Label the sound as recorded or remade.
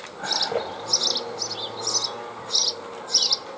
recorded